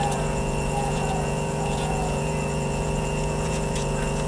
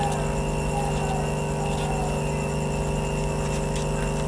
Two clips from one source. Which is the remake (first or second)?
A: first